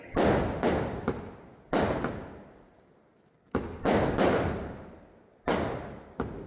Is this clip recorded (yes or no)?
yes